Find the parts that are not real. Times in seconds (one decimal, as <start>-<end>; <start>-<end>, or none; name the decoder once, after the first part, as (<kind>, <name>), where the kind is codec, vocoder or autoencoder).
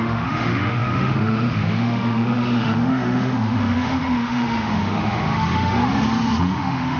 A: 0.0-5.8 (autoencoder, DAC-VAE); 6.4-7.0